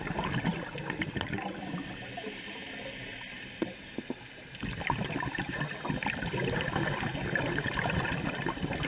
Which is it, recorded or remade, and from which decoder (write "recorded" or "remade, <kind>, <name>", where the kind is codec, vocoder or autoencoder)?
remade, vocoder, BigVGAN v2